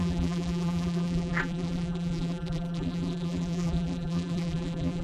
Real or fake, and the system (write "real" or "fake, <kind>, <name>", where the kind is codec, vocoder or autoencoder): fake, vocoder, BigVGAN v2